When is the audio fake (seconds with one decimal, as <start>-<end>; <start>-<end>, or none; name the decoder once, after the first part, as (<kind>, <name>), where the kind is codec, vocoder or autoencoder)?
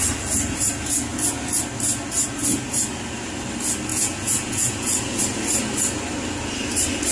3.9-5.2 (vocoder, Vocos)